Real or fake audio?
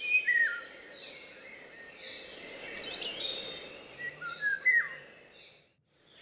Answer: real